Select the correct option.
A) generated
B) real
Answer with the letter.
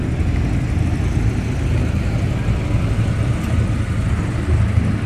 B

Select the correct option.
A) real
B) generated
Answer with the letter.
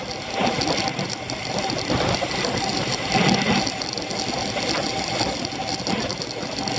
A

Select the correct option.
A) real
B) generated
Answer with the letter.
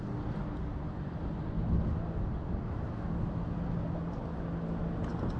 A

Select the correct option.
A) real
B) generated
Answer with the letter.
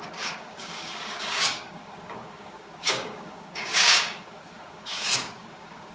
B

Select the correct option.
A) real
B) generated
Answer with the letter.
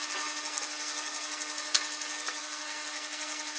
B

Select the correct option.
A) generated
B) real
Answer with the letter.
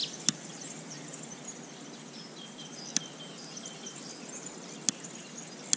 B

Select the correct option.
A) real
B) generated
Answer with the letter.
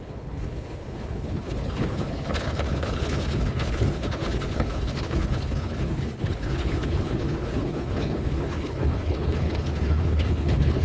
B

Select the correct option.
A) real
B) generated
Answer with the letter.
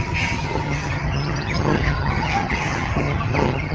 B